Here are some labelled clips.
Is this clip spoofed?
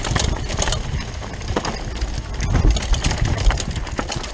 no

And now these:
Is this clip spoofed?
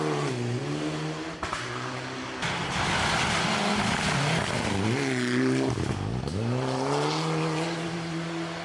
no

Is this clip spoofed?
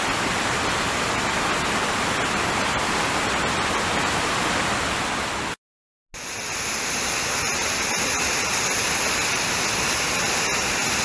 no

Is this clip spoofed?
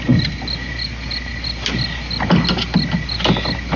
no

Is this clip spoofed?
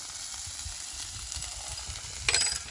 no